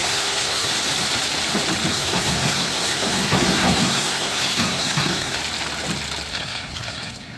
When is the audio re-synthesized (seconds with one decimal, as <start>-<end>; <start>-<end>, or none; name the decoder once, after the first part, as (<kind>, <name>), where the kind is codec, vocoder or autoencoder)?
0.0-0.7 (codec, SNAC); 1.9-5.4; 6.3-7.4